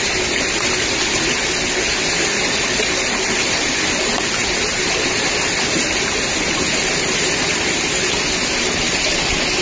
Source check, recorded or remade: recorded